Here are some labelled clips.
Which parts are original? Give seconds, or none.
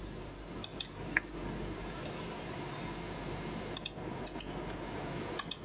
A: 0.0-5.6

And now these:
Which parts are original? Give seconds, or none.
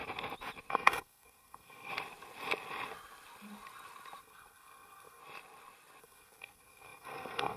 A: 0.0-0.7; 1.9-4.2; 5.2-6.0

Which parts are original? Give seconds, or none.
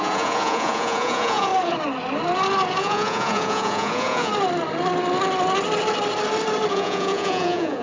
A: 1.5-2.8; 4.3-6.7